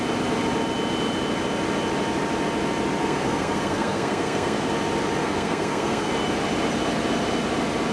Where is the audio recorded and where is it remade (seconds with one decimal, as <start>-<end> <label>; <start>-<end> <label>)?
0.0-3.0 recorded; 3.0-4.7 remade; 4.7-5.2 recorded; 5.2-6.1 remade; 6.1-7.9 recorded